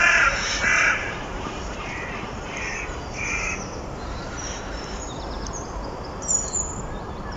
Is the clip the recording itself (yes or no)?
no